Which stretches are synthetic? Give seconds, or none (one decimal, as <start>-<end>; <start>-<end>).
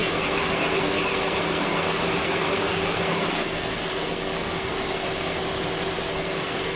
0.0-5.4; 6.1-6.8